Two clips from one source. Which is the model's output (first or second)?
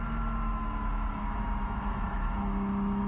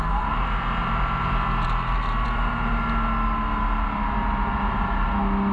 first